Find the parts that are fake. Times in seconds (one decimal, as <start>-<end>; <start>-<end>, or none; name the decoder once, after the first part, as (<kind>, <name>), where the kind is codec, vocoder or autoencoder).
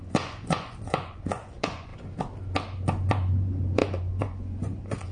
0.0-1.9 (vocoder, Vocos); 3.1-5.1